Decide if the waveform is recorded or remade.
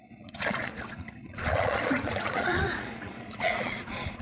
remade